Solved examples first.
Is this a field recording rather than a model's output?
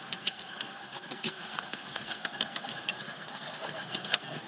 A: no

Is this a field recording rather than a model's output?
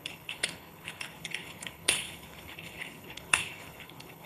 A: no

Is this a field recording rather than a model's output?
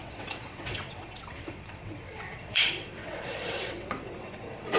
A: no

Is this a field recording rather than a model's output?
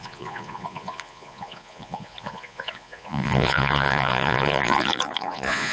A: no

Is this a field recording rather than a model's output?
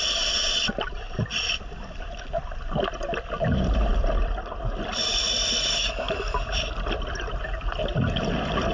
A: no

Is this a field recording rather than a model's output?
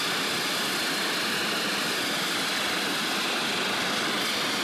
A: yes